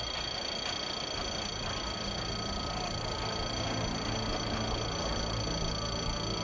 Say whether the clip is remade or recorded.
recorded